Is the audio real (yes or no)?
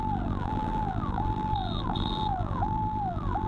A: no